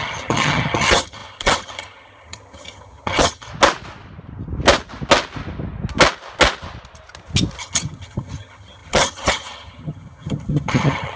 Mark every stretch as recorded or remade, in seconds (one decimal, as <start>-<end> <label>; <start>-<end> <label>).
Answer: 0.0-3.5 remade; 3.5-7.6 recorded; 7.6-11.2 remade